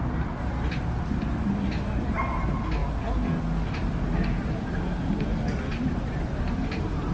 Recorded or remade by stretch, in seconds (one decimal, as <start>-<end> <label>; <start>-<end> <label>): 0.0-7.1 recorded